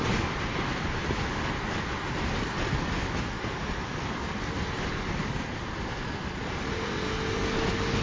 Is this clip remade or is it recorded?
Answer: recorded